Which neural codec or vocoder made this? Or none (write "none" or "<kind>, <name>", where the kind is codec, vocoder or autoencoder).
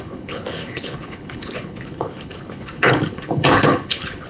codec, HILCodec